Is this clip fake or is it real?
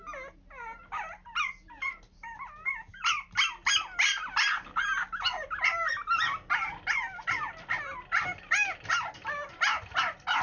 real